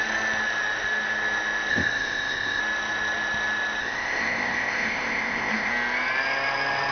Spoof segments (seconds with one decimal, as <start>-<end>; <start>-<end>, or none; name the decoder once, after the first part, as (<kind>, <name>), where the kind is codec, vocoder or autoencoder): 1.7-2.6 (codec, ZipCodec); 3.8-5.7